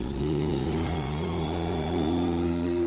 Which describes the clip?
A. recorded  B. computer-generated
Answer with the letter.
B